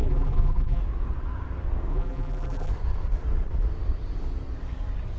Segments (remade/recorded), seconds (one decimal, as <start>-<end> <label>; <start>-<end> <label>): 0.0-0.8 remade; 0.8-1.9 recorded; 1.9-2.7 remade; 2.7-5.2 recorded